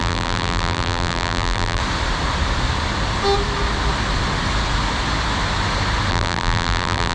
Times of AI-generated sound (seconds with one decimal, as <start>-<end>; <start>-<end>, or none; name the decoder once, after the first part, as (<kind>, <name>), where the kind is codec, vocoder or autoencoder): 0.0-1.8 (vocoder, BigVGAN v2); 6.1-7.1